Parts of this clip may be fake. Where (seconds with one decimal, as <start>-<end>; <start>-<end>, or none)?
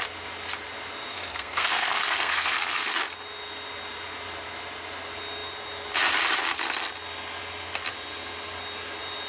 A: 1.1-3.0